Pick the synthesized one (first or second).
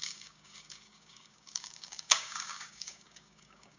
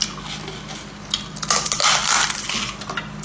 first